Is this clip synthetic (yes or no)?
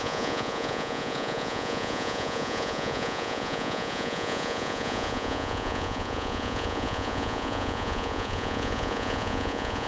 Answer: yes